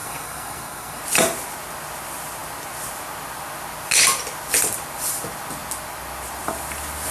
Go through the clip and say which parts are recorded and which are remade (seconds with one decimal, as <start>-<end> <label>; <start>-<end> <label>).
0.0-1.0 remade; 1.0-7.1 recorded